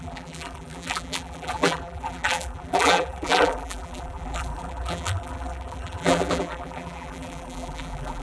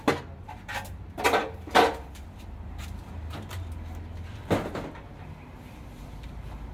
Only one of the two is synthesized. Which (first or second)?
first